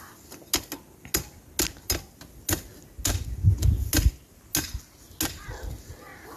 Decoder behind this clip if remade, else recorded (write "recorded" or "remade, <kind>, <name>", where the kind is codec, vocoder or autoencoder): recorded